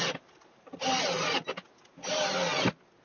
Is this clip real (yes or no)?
yes